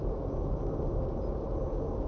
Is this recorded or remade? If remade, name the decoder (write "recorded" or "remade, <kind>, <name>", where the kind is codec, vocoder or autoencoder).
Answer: recorded